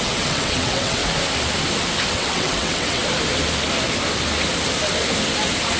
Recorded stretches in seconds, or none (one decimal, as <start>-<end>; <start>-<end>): 1.0-2.1; 3.0-5.8